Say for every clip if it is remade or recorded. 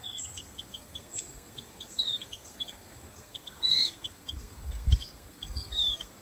remade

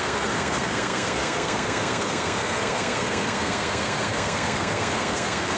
remade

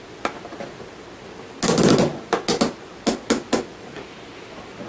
recorded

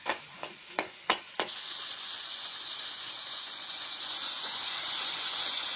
remade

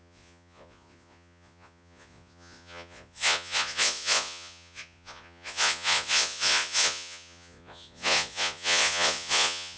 remade